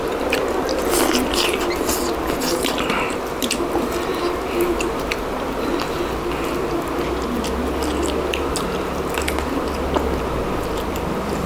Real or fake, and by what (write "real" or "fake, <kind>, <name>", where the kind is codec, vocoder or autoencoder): real